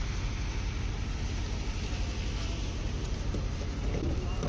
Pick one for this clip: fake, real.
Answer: real